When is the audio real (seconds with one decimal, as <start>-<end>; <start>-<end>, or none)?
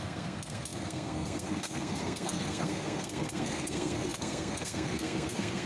none